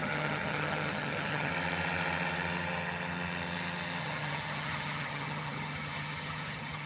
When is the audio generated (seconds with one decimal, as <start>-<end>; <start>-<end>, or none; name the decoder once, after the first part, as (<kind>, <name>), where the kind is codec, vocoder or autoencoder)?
0.0-1.5 (vocoder, HiFi-GAN); 4.0-6.9